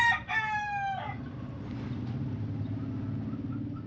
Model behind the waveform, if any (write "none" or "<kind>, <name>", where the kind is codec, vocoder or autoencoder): none